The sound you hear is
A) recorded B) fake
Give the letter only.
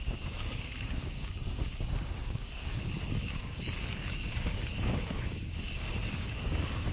B